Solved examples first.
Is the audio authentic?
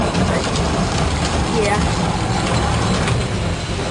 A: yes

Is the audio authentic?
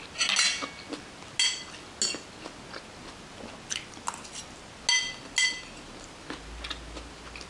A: yes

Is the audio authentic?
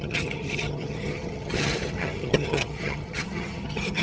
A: no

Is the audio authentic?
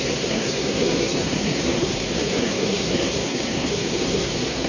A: no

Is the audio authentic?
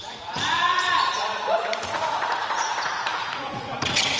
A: no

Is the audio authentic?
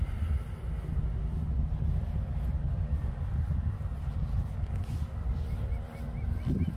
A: yes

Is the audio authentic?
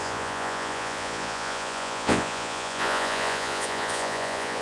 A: no